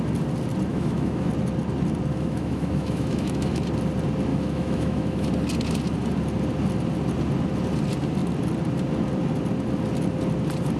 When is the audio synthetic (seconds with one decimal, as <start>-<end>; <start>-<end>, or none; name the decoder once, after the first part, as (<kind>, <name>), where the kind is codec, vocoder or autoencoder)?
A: 0.7-1.3 (autoencoder, DAC-VAE); 2.1-3.6; 4.3-5.3